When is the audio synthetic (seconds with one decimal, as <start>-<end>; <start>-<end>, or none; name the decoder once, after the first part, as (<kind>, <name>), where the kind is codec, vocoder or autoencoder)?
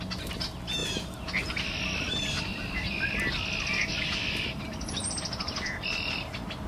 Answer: 0.8-3.2 (vocoder, BigVGAN v2); 3.9-5.0